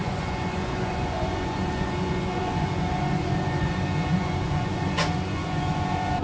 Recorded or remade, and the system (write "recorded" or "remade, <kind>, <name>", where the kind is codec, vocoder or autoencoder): remade, vocoder, Vocos